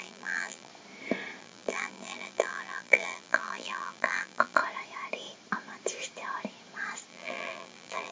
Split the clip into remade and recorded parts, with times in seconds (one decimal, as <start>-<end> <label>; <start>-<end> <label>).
0.0-0.7 remade; 0.7-1.4 recorded; 1.4-4.6 remade; 4.6-7.1 recorded; 7.1-8.1 remade